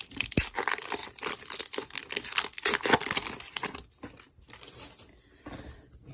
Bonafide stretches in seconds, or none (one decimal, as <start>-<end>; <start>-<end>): 0.0-6.1